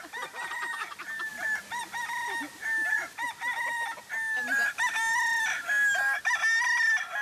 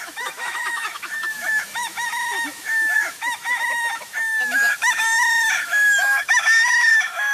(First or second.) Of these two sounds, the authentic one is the first